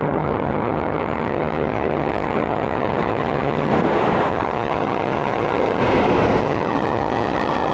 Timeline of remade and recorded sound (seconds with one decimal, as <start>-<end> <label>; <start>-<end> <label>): 0.0-3.7 remade; 3.7-4.3 recorded; 4.3-5.8 remade; 5.8-6.4 recorded; 6.4-7.7 remade